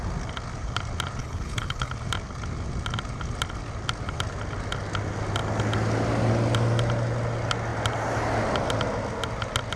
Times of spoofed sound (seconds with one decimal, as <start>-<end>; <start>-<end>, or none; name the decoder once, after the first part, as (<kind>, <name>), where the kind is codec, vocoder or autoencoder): 1.2-1.9 (codec, HILCodec)